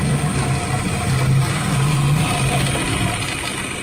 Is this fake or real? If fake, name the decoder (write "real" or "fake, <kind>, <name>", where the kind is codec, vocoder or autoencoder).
real